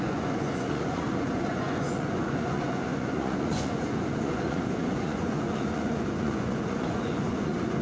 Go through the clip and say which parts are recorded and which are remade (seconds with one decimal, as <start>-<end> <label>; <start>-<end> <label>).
0.0-7.8 remade